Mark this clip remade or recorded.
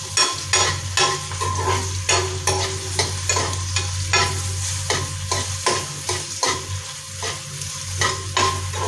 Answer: recorded